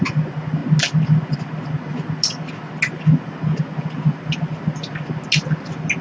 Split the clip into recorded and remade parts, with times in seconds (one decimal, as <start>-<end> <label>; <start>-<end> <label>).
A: 0.0-6.0 recorded